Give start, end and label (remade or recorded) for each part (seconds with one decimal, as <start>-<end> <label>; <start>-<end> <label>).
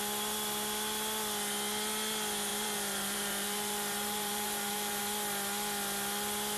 0.0-2.5 recorded; 2.5-5.0 remade; 5.0-6.6 recorded